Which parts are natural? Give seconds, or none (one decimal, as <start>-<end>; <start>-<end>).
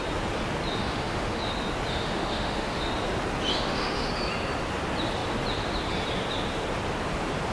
0.0-0.8; 1.4-1.9; 2.8-3.5; 4.1-7.5